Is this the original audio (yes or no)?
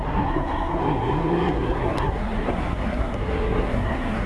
no